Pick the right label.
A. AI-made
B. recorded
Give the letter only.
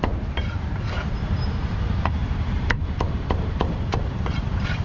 A